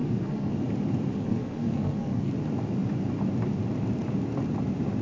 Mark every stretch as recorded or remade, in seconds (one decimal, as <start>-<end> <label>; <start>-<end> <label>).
0.0-0.5 remade; 0.5-1.1 recorded; 1.1-2.3 remade; 2.3-5.0 recorded